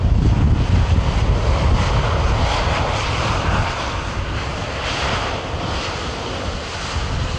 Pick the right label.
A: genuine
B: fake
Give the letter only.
A